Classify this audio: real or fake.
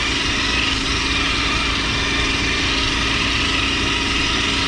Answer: real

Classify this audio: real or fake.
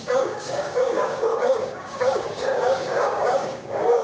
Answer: fake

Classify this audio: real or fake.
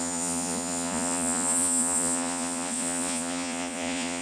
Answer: fake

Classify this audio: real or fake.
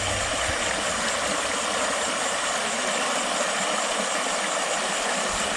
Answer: real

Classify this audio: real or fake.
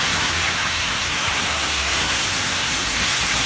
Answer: fake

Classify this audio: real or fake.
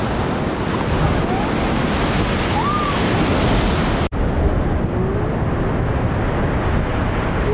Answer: real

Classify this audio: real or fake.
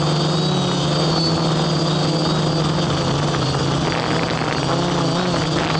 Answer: real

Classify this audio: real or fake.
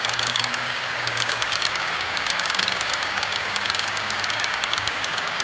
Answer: fake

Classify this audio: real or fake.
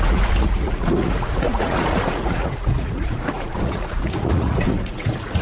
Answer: fake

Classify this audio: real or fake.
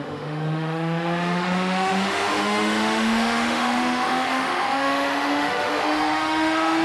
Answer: fake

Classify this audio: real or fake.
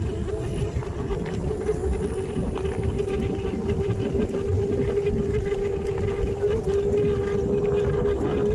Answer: real